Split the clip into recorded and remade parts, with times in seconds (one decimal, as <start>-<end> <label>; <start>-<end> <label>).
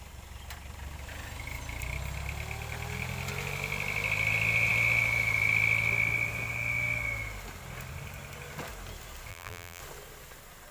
0.0-9.3 recorded; 9.3-9.8 remade; 9.8-10.7 recorded